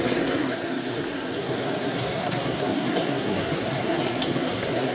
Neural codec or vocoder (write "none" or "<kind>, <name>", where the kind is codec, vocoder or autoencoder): codec, SNAC